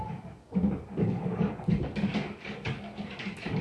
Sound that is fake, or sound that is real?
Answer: fake